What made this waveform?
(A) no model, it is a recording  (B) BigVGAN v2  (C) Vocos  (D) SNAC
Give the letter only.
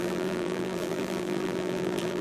B